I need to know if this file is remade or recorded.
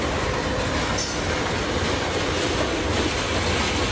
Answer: recorded